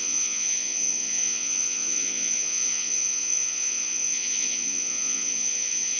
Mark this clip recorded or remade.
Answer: remade